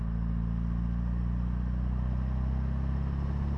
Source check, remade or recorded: recorded